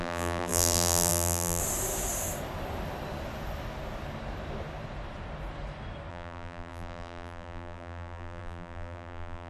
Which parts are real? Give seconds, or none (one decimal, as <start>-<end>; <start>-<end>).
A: 1.6-6.1